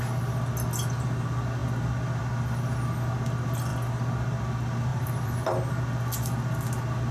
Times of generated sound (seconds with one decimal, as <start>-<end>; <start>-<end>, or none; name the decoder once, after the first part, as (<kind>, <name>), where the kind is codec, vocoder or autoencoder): 4.9-5.8 (vocoder, BigVGAN v2)